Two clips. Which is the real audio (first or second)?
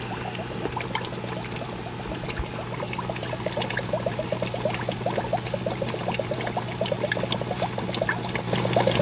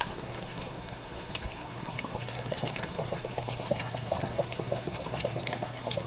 first